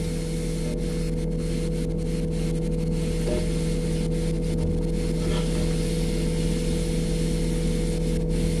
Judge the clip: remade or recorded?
recorded